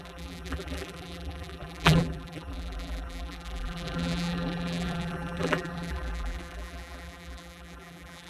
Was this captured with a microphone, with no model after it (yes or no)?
no